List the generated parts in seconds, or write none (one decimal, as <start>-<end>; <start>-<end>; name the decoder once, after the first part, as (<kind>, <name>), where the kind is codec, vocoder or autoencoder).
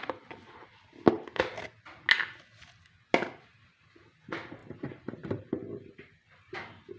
4.6-6.5 (vocoder, BigVGAN v2)